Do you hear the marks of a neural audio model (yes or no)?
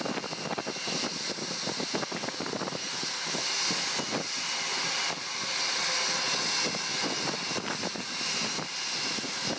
no